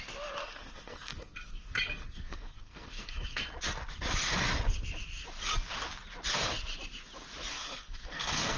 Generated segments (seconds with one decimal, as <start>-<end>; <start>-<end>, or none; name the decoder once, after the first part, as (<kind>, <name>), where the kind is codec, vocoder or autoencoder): 0.4-3.4 (codec, SNAC); 7.5-8.6